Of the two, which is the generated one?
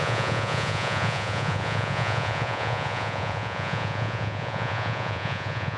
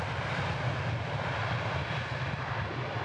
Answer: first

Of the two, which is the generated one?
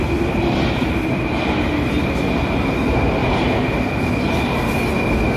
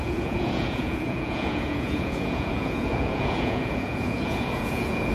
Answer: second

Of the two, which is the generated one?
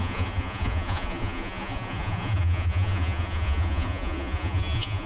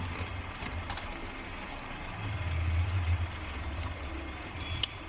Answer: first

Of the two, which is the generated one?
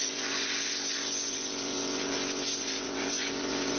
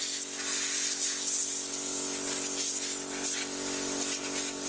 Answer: first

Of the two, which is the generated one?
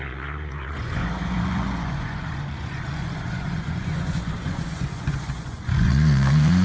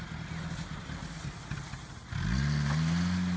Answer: first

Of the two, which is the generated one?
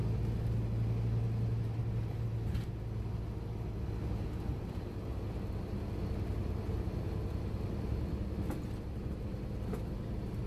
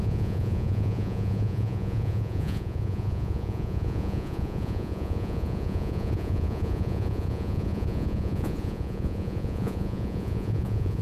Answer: second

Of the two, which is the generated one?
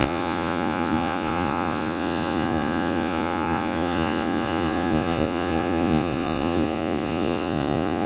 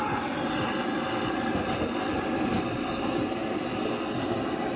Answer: first